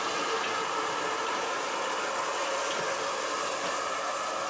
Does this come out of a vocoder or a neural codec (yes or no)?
no